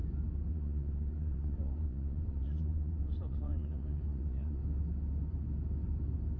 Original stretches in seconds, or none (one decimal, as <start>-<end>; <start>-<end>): 0.0-0.5; 4.6-6.4